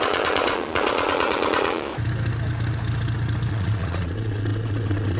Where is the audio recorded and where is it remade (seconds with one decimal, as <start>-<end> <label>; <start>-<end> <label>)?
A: 0.0-1.9 remade; 1.9-3.5 recorded; 3.5-5.2 remade